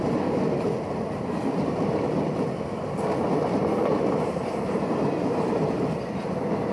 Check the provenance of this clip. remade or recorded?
recorded